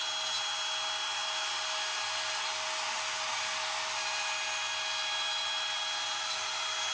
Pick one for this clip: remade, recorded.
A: recorded